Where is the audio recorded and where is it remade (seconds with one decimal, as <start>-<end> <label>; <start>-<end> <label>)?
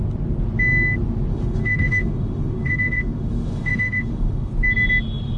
0.0-1.3 recorded; 1.3-4.5 remade; 4.5-5.4 recorded